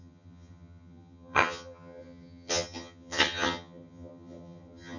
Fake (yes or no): yes